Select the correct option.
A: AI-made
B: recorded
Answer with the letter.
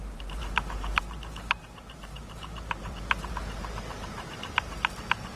A